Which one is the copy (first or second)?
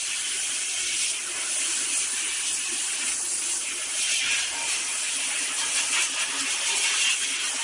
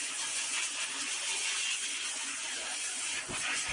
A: second